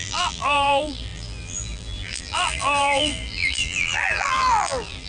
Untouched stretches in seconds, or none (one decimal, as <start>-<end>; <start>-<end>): none